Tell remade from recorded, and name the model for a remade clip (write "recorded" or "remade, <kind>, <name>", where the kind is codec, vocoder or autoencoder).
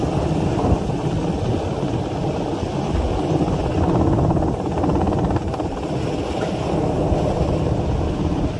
recorded